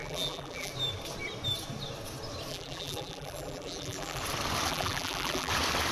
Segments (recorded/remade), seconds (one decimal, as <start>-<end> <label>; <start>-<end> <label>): 0.0-0.7 remade; 0.7-2.5 recorded; 2.5-4.2 remade; 4.2-4.7 recorded; 4.7-5.5 remade; 5.5-5.9 recorded